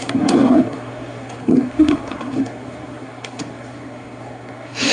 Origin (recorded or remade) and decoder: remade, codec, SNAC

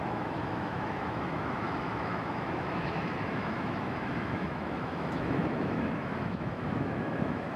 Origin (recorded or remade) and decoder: remade, autoencoder, DAC-VAE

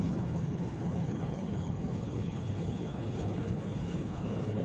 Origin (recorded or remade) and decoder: remade, codec, HILCodec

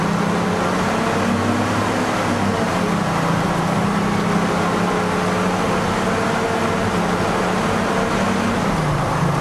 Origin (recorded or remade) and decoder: recorded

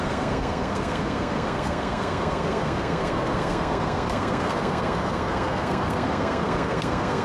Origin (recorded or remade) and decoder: remade, codec, SNAC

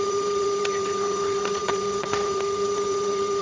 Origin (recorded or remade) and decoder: remade, vocoder, HiFi-GAN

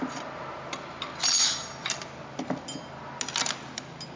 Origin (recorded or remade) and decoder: recorded